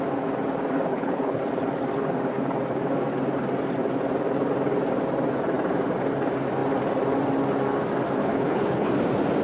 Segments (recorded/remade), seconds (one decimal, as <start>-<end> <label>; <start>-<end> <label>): 0.0-0.9 recorded; 0.9-1.4 remade; 1.4-8.2 recorded; 8.2-8.9 remade; 8.9-9.4 recorded